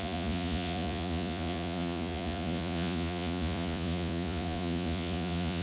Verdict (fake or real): fake